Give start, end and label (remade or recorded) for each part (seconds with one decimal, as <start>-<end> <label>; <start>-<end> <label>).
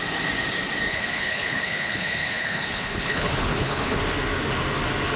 0.0-0.9 recorded; 0.9-4.0 remade; 4.0-5.2 recorded